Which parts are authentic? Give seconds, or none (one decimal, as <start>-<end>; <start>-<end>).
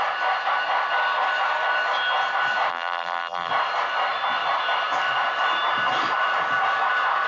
0.0-2.7; 3.5-7.3